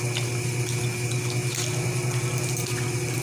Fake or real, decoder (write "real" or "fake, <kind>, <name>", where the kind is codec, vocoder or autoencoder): real